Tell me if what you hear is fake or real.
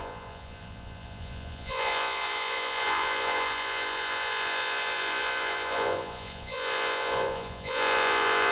fake